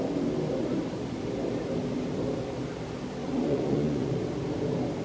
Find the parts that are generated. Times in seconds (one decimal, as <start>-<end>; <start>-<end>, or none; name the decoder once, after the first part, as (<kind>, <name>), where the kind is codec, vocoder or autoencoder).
3.2-4.1 (vocoder, Vocos)